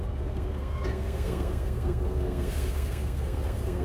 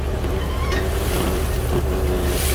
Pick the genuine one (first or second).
second